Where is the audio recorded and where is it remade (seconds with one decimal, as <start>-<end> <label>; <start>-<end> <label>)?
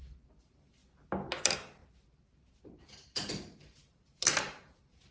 0.0-0.8 remade; 0.8-1.4 recorded; 1.4-5.1 remade